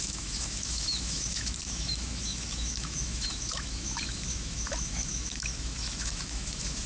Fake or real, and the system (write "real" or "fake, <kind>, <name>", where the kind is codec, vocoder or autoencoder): fake, autoencoder, DAC-VAE